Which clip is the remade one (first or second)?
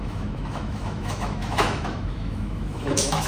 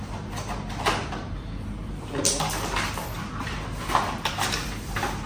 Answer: first